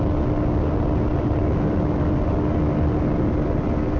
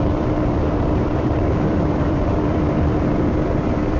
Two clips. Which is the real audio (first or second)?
first